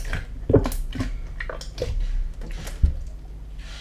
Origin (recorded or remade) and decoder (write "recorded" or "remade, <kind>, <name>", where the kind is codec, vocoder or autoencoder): recorded